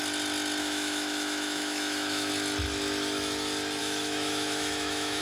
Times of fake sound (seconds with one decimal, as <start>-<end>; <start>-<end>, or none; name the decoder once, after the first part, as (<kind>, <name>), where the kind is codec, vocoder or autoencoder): 0.6-2.3 (autoencoder, DAC-VAE); 3.8-5.2